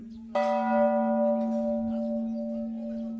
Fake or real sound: real